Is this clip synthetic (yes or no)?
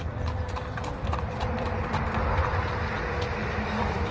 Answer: yes